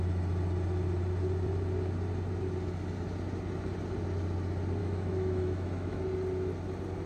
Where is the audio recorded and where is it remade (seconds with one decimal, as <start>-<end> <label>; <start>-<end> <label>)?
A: 0.0-4.8 recorded; 4.8-6.0 remade; 6.0-7.1 recorded